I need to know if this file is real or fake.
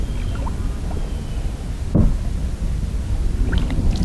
real